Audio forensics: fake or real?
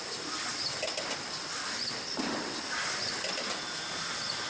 real